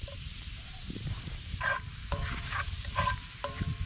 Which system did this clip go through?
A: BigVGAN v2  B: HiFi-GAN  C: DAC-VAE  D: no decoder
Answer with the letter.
A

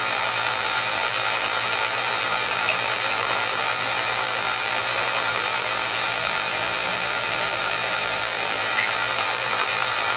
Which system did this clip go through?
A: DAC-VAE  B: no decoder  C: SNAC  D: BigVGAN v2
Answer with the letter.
D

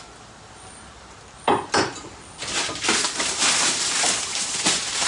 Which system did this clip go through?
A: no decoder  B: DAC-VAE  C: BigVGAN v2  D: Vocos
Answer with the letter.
C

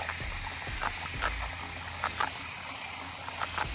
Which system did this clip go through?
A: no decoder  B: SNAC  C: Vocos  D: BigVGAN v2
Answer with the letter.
A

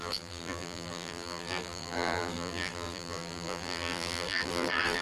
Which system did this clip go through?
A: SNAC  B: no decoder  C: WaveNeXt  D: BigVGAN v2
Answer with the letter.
D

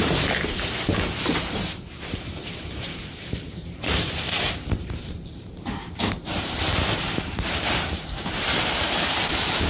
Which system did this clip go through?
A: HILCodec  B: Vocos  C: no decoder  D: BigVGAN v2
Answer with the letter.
D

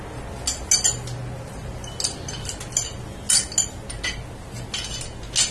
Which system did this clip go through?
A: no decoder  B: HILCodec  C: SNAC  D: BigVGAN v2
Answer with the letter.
A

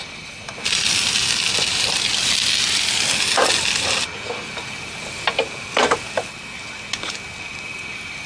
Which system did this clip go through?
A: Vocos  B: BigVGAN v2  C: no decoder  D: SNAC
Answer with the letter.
C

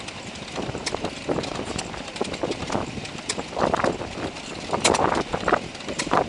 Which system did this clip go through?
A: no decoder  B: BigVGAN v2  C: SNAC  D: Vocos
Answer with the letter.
B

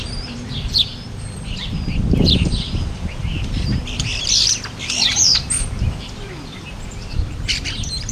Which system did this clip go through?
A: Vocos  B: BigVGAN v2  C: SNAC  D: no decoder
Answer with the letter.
B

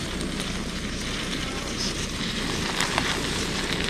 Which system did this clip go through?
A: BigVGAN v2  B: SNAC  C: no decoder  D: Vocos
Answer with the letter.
A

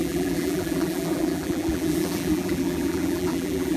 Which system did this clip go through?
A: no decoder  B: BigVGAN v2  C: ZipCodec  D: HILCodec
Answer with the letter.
B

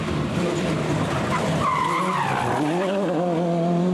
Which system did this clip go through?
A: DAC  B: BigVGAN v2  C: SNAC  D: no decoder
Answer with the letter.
B